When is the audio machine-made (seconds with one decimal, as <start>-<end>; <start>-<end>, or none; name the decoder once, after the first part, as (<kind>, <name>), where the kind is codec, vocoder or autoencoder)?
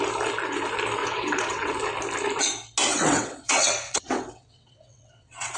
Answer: 1.0-1.7 (vocoder, WaveNeXt); 2.9-5.6